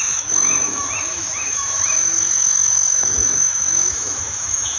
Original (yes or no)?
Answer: no